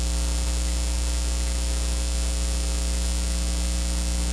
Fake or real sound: real